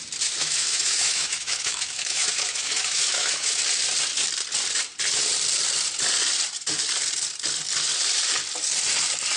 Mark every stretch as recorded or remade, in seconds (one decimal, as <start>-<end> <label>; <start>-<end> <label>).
0.0-0.4 recorded; 0.4-3.6 remade; 3.6-9.4 recorded